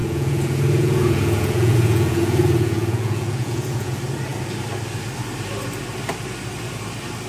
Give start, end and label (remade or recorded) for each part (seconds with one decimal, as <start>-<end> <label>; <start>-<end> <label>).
0.0-3.9 remade; 3.9-7.3 recorded